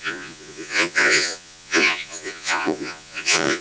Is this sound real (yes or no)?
no